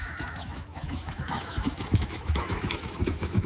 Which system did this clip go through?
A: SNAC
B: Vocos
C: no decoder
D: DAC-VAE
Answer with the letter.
D